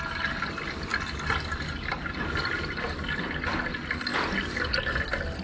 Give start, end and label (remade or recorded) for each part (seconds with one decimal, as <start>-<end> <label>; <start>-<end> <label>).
0.0-5.4 recorded